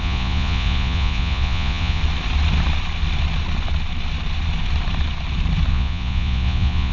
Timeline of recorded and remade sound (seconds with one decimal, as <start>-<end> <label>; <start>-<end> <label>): 0.0-2.0 remade; 2.0-5.7 recorded; 5.7-6.9 remade